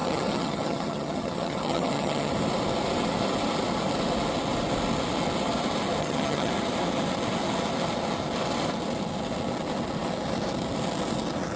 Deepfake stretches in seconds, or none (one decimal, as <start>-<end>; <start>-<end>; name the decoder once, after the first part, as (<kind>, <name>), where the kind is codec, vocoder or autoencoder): 0.0-2.3 (vocoder, HiFi-GAN); 6.0-6.5